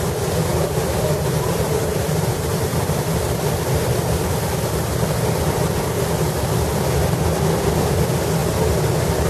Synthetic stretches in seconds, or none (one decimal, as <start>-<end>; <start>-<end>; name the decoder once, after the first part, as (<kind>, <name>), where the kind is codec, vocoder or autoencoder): 0.5-3.2 (vocoder, BigVGAN v2)